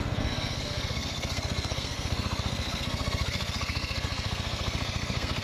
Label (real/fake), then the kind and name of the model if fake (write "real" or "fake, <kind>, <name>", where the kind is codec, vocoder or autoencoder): fake, codec, SNAC